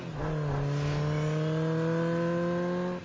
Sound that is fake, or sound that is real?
real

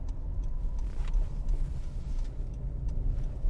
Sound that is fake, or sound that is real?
real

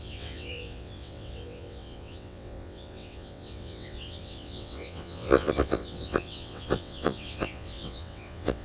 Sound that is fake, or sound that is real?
fake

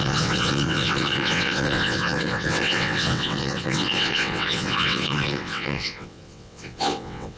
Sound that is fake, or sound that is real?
fake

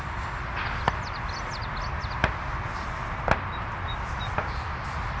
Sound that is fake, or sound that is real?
real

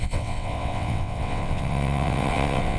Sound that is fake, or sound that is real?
fake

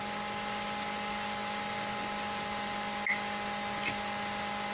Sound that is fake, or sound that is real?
real